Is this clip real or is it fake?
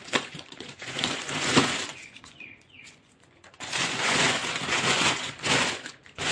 fake